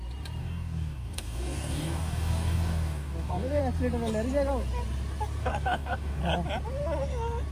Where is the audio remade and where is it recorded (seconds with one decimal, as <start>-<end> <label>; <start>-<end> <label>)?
0.0-0.4 recorded; 0.4-3.6 remade; 3.6-5.4 recorded; 5.4-6.2 remade; 6.2-7.5 recorded